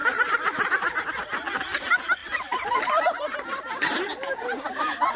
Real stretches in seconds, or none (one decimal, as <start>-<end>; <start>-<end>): 1.0-2.2; 4.7-5.2

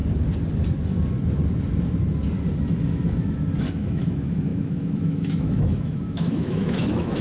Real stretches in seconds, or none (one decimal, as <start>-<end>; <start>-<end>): 0.0-3.7

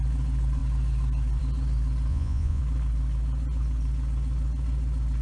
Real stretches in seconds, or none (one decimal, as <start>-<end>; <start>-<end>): 0.0-2.1; 2.6-5.2

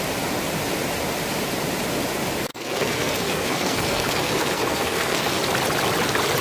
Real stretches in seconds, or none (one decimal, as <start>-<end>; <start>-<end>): 0.0-2.5; 5.4-6.4